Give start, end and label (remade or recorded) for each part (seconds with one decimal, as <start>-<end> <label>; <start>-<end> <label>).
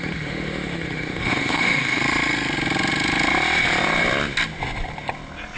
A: 0.0-2.0 remade; 2.0-5.6 recorded